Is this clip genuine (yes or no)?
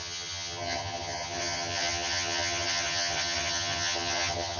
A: no